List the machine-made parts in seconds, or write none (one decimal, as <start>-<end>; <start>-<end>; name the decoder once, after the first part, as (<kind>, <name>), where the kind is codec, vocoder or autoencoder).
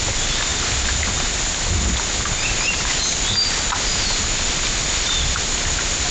none